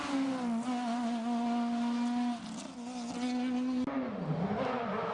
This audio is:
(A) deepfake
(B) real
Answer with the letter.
B